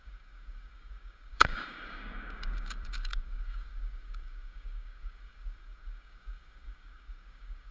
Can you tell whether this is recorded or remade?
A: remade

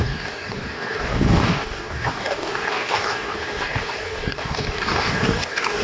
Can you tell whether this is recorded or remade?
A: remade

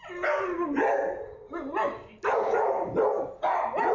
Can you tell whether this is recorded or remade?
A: recorded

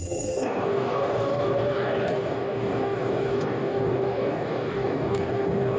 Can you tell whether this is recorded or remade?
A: remade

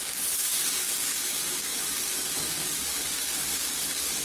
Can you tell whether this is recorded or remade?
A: remade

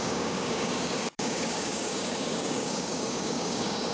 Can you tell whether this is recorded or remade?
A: remade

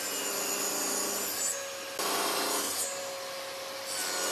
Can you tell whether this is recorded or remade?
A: recorded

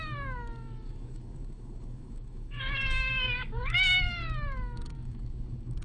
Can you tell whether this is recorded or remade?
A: remade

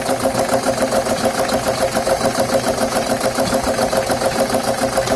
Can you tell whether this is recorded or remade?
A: recorded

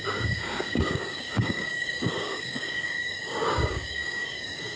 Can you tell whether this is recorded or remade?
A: remade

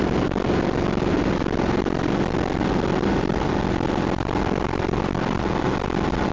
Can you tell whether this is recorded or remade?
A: recorded